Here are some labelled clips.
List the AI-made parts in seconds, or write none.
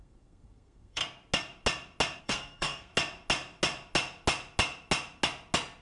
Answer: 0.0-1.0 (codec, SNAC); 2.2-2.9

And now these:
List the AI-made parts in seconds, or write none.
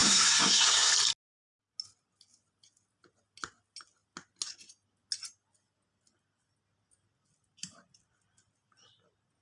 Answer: 0.0-0.9 (codec, SNAC)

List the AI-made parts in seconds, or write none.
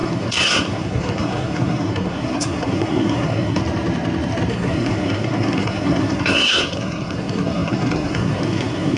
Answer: 0.0-3.6 (codec, SNAC); 4.5-9.0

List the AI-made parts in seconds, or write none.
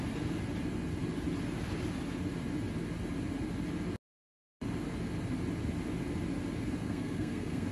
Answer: 6.8-7.7 (codec, SNAC)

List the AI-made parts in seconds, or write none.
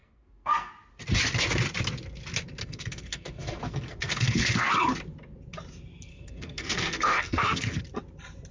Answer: 0.0-0.7 (codec, SNAC); 2.6-4.7; 6.1-7.8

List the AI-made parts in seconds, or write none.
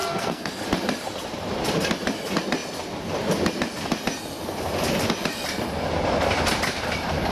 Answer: 0.0-0.5 (codec, SNAC)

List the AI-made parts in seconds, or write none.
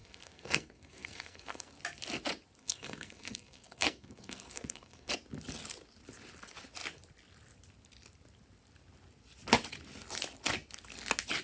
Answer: 0.0-1.8 (codec, SNAC); 2.6-5.1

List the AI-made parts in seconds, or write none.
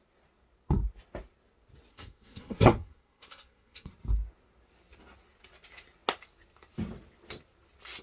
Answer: 1.9-3.9 (codec, SNAC)